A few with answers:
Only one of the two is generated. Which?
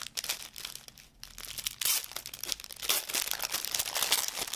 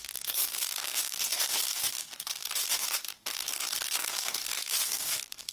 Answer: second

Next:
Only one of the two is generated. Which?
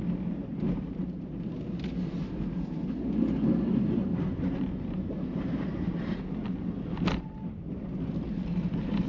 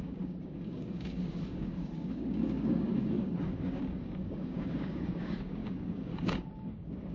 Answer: second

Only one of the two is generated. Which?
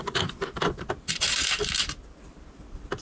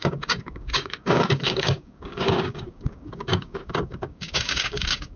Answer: second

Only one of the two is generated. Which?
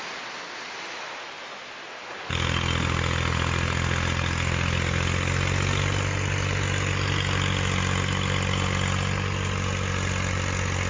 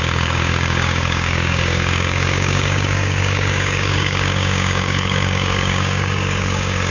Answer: second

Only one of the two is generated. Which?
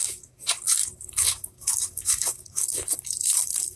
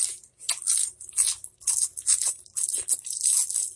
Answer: first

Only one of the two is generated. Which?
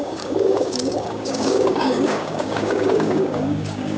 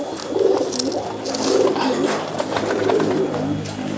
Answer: first